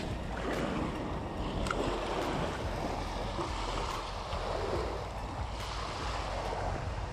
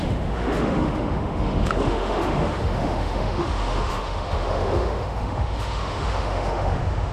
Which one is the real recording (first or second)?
first